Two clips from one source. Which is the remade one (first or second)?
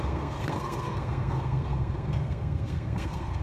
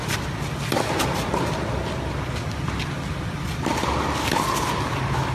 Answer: first